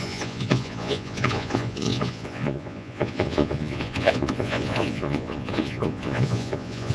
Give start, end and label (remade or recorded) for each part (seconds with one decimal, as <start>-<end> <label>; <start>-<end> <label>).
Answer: 0.0-6.9 remade